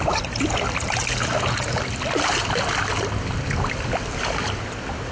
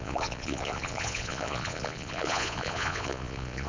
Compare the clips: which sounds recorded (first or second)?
first